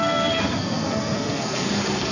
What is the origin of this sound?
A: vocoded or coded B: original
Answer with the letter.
A